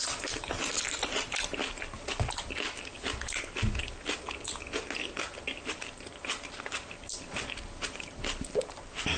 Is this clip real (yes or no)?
yes